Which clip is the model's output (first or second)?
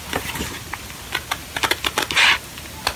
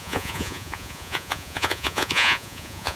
second